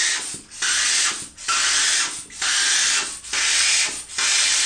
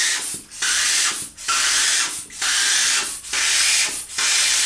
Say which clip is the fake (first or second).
second